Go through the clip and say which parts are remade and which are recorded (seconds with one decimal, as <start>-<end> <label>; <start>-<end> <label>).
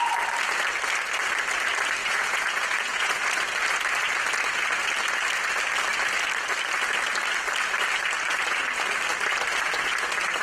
0.0-2.0 recorded; 2.0-3.1 remade; 3.1-10.4 recorded